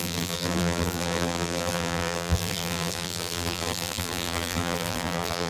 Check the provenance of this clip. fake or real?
fake